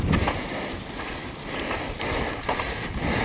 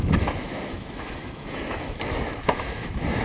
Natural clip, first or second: first